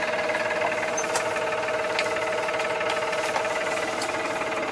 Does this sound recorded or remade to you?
recorded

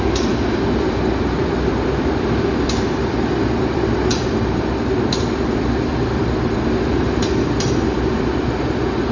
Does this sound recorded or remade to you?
remade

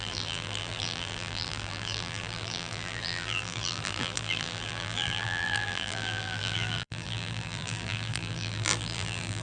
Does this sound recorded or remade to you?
remade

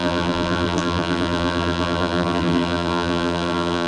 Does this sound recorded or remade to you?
remade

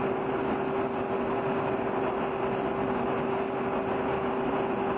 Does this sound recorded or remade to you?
recorded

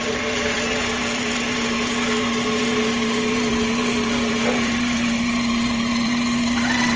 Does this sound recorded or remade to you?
remade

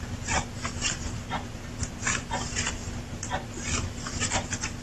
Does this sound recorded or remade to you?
recorded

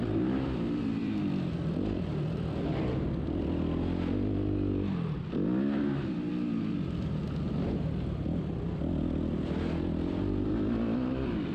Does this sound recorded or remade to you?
remade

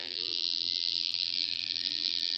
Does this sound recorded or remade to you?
remade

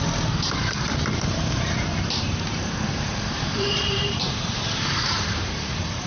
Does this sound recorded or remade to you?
remade